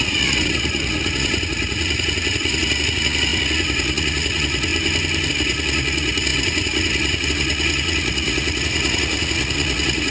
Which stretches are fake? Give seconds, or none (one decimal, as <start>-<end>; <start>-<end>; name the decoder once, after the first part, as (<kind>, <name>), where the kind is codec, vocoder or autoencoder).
0.0-4.7 (vocoder, Vocos); 5.3-10.1